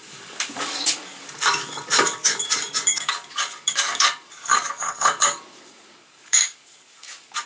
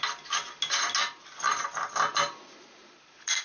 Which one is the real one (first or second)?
second